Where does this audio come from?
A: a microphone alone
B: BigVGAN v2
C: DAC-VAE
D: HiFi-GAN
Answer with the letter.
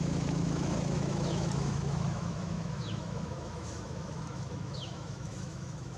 C